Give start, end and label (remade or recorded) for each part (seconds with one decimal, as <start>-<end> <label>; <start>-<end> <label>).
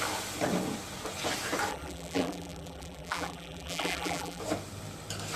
0.0-1.7 recorded; 1.7-4.4 remade; 4.4-5.4 recorded